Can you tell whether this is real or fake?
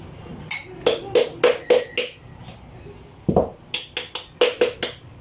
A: real